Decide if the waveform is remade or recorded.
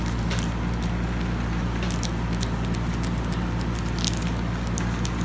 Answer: recorded